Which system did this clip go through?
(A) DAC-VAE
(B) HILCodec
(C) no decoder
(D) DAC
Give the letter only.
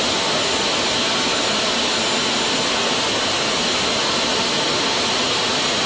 C